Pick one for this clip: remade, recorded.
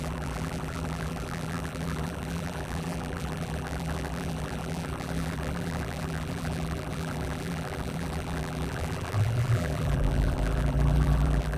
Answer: remade